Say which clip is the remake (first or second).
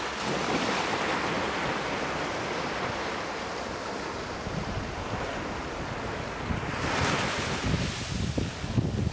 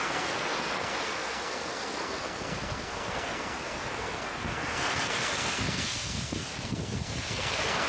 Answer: second